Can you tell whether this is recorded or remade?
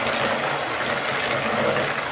recorded